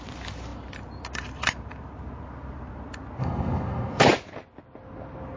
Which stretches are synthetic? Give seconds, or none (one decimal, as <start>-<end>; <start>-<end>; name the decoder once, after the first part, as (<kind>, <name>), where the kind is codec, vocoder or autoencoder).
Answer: 3.2-4.0 (codec, SNAC)

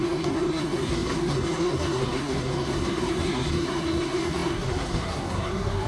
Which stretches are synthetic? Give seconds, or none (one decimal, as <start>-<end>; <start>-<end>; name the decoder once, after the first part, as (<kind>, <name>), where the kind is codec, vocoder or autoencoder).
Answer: 0.0-5.9 (codec, SNAC)

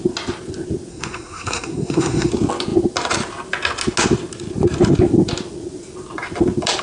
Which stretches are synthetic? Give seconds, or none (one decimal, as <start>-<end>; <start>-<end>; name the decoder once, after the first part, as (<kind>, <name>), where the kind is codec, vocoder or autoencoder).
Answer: 0.9-2.3 (codec, SNAC)

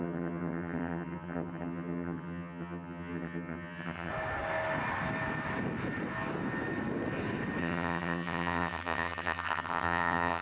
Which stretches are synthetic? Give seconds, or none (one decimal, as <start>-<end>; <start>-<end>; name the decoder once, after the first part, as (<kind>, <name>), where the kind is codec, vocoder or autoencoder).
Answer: 0.0-4.1 (vocoder, HiFi-GAN); 7.6-10.4

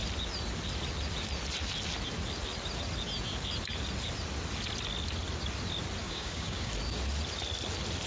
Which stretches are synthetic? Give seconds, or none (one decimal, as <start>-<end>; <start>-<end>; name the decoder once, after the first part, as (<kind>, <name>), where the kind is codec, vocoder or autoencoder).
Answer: 6.0-6.7 (codec, DAC)

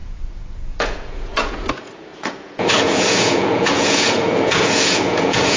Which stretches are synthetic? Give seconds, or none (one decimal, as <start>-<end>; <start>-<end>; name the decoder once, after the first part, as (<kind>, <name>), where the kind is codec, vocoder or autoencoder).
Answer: 0.0-5.6 (vocoder, Vocos)